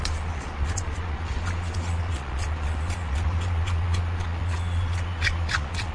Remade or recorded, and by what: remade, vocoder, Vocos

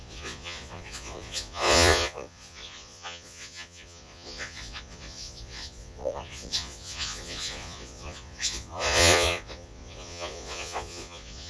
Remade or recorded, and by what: remade, vocoder, Vocos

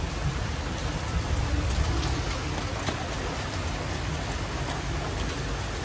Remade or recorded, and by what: recorded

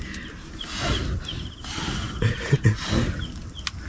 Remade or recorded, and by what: recorded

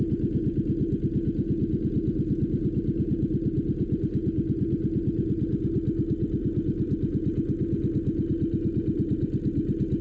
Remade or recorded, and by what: recorded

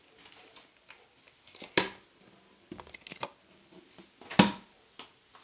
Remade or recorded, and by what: recorded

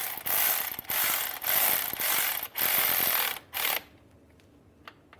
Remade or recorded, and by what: recorded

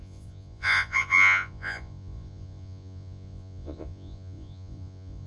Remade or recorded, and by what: remade, vocoder, Vocos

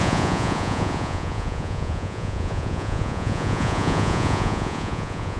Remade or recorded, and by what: remade, vocoder, Vocos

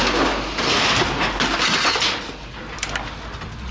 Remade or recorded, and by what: recorded